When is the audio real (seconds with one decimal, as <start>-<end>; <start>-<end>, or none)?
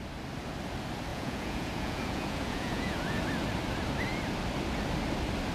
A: 0.0-1.1; 3.2-5.5